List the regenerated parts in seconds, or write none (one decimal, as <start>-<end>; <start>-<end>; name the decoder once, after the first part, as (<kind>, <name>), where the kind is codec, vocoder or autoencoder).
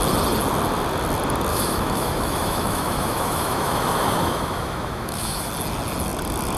1.5-5.5 (autoencoder, DAC-VAE)